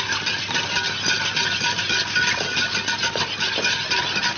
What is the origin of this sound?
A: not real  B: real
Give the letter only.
B